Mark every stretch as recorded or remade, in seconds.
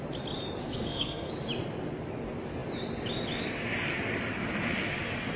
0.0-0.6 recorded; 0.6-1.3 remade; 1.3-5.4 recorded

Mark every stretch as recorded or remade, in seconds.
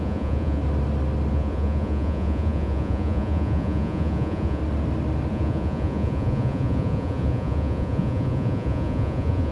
0.0-0.6 remade; 0.6-1.3 recorded; 1.3-4.6 remade; 4.6-5.3 recorded; 5.3-9.5 remade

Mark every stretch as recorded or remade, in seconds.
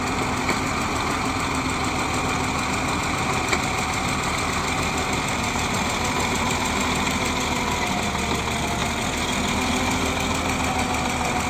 0.0-11.5 recorded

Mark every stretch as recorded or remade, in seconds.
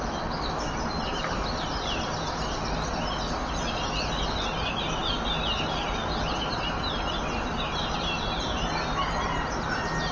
0.0-10.1 recorded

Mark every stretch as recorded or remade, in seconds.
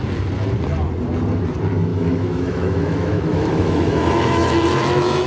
0.0-1.9 recorded; 1.9-5.3 remade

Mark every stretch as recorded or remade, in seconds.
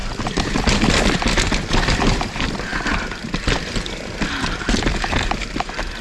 0.0-0.9 recorded; 0.9-6.0 remade